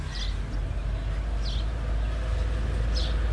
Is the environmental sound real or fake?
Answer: real